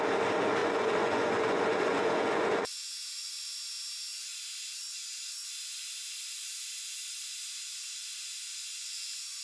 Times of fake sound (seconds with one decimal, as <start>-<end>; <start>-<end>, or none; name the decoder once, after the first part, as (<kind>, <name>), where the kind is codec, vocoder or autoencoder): 0.6-3.4 (vocoder, Vocos)